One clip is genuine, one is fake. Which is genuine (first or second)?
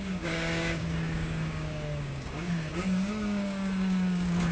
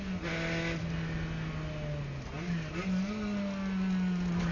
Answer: second